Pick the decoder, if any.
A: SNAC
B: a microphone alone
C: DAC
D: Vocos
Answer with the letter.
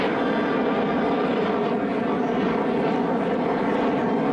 B